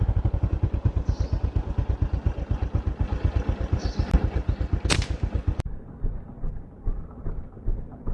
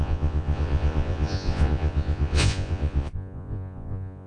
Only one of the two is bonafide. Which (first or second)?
first